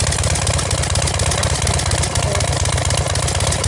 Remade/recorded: recorded